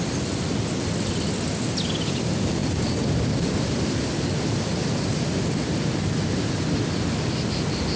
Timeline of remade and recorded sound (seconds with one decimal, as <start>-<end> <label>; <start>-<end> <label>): 0.0-8.0 recorded